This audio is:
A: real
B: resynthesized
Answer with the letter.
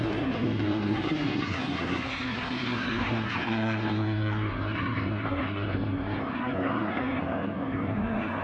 B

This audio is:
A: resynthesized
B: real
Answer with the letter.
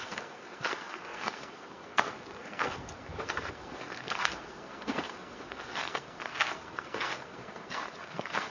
A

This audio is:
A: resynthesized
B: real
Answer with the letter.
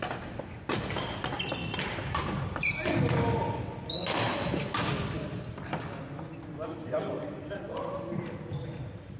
B